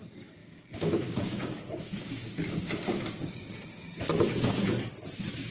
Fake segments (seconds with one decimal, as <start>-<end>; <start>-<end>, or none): 0.4-3.7